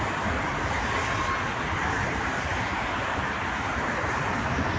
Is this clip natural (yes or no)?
yes